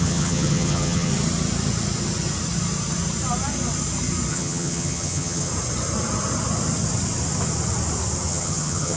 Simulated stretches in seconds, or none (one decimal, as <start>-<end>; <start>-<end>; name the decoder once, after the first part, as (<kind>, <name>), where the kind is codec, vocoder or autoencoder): 0.0-1.1 (vocoder, HiFi-GAN); 4.3-5.5; 8.3-9.0